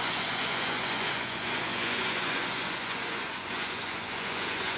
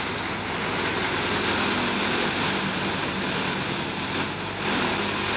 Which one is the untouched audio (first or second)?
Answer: second